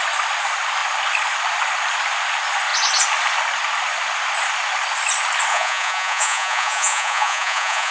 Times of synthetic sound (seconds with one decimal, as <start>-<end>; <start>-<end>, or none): 5.5-7.9